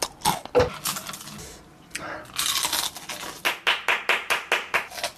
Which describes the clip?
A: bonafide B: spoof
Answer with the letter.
A